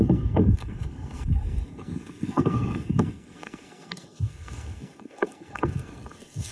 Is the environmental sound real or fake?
fake